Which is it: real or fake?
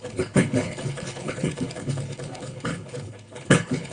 fake